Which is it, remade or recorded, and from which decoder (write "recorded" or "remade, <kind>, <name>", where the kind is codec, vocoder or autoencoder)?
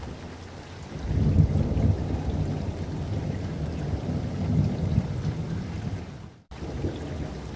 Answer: recorded